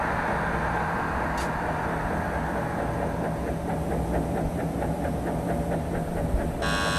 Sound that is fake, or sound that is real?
real